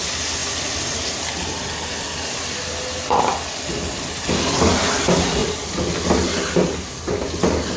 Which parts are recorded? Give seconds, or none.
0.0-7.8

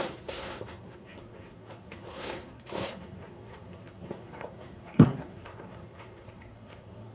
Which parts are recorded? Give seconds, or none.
none

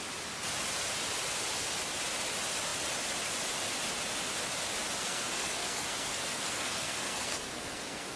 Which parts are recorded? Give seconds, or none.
0.0-5.0

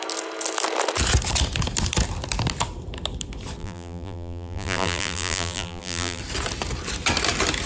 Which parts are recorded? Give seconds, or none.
0.0-3.6; 6.2-7.7

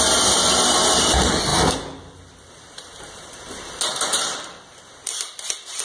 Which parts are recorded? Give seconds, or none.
0.0-5.8

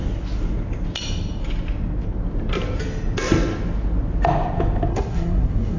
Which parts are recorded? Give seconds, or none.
0.0-4.9

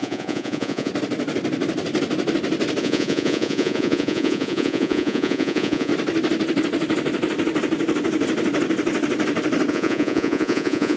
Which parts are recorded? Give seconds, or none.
0.9-2.8; 5.9-9.7

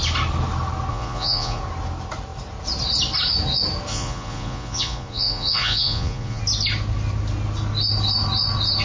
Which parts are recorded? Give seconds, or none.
0.0-0.9; 1.6-3.9; 6.4-8.8